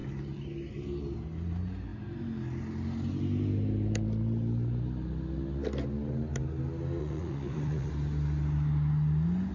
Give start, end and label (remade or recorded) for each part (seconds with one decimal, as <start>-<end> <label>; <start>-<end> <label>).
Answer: 0.0-7.0 recorded; 7.0-7.9 remade; 7.9-9.5 recorded

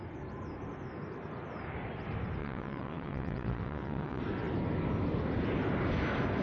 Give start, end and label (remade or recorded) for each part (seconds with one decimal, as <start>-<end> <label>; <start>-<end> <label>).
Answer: 0.0-2.4 recorded; 2.4-4.2 remade; 4.2-6.4 recorded

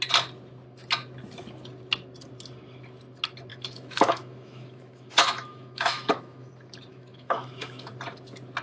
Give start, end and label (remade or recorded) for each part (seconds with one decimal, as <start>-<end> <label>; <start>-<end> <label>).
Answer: 0.0-3.5 recorded; 3.5-6.5 remade; 6.5-6.9 recorded; 6.9-7.9 remade; 7.9-8.6 recorded